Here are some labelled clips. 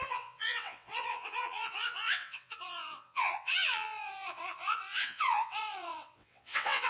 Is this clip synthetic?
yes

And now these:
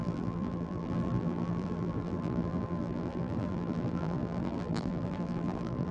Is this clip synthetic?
yes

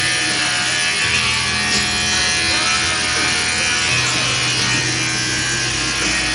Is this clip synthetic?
no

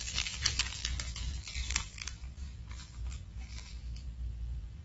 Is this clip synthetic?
yes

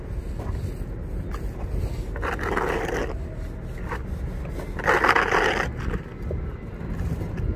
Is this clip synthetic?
no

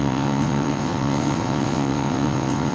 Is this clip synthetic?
yes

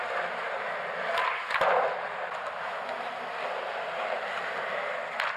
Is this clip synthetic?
no